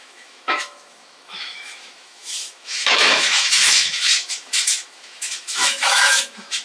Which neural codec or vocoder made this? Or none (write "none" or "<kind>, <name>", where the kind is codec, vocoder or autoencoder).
autoencoder, DAC-VAE